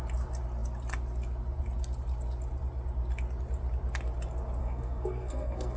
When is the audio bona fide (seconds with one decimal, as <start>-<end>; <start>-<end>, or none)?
0.0-4.6